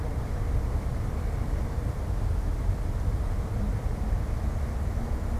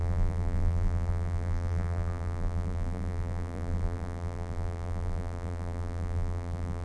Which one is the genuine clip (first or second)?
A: first